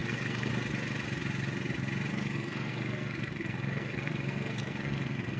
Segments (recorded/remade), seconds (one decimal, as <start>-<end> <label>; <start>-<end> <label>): 0.0-0.5 remade; 0.5-2.1 recorded; 2.1-5.4 remade